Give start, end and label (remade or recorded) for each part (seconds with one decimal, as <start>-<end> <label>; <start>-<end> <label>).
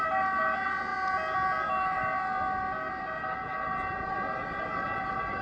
0.0-5.4 recorded